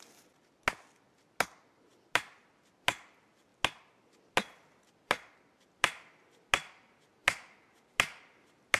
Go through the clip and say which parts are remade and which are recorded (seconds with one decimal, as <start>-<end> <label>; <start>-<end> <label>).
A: 0.0-8.8 recorded